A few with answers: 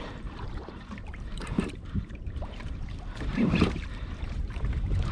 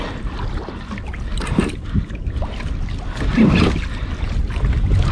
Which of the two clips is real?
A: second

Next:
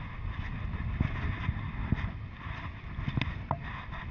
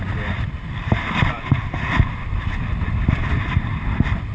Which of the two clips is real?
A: first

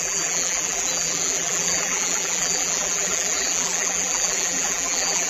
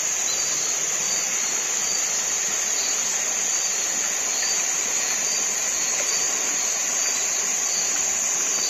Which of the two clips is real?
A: second